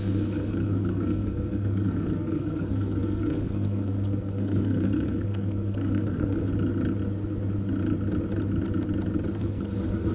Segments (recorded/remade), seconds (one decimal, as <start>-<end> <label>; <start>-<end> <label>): 0.0-6.5 remade; 6.5-9.4 recorded; 9.4-10.1 remade